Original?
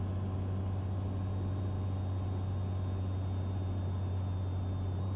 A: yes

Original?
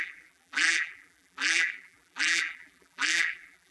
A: no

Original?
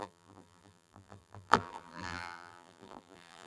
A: no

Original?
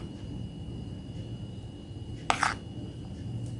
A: yes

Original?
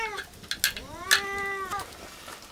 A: yes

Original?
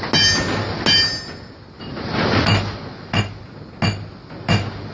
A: yes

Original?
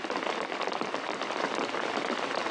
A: yes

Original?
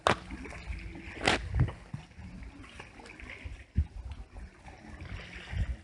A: yes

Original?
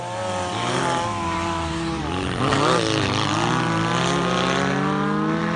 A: yes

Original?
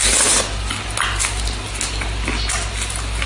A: yes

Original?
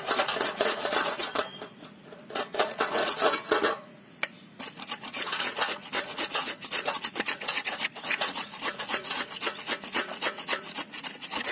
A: no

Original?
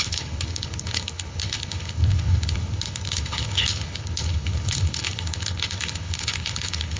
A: no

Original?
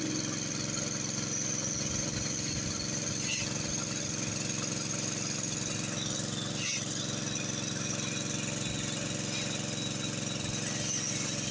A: yes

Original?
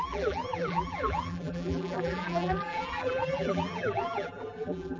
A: no